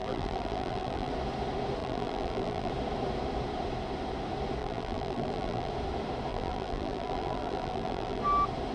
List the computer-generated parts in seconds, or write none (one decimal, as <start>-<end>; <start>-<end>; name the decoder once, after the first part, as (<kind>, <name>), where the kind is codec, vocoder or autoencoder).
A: 0.0-1.1 (vocoder, BigVGAN v2); 1.8-2.7; 4.6-5.7; 6.3-8.2